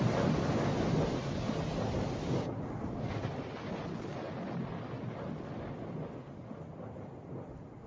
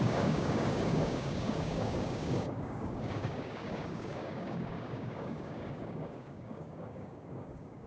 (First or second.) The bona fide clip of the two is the first